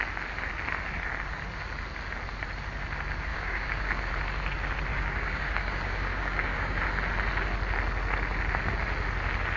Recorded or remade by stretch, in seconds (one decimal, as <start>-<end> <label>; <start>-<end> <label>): 0.0-3.3 recorded; 3.3-4.1 remade; 4.1-4.9 recorded; 4.9-6.8 remade; 6.8-9.6 recorded